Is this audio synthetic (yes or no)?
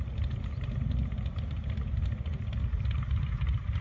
no